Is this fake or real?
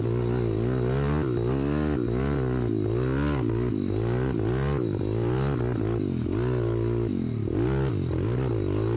real